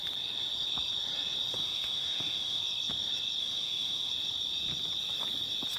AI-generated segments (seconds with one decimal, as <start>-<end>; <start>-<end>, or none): 1.5-2.6; 3.4-4.1